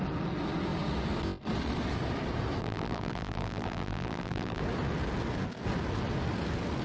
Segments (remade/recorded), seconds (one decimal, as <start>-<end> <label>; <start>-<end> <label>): 0.0-2.6 recorded; 2.6-4.6 remade; 4.6-6.8 recorded